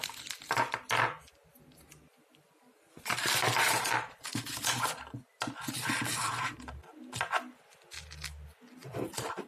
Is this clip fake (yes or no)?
no